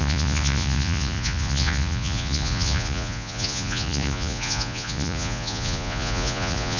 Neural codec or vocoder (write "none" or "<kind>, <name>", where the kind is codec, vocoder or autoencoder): vocoder, Vocos